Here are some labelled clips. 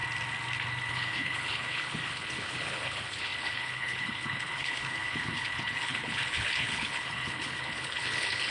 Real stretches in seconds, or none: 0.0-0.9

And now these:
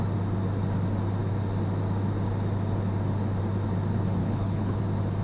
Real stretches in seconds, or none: 0.0-4.2; 4.8-5.2

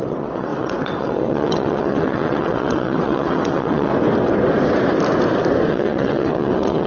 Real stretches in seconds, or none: 3.9-5.7

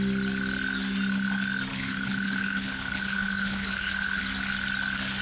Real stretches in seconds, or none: 0.0-1.7; 4.2-5.2

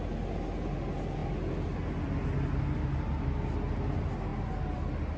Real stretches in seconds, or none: 0.0-5.2